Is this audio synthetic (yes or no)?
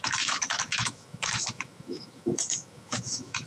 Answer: yes